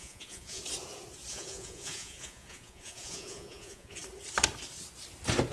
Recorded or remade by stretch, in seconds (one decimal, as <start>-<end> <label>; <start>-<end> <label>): 0.0-0.6 remade; 0.6-1.3 recorded; 1.3-4.0 remade; 4.0-5.5 recorded